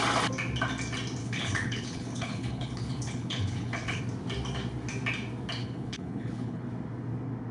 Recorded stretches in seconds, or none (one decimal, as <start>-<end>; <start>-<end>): 0.0-1.2; 4.0-5.6; 6.6-7.5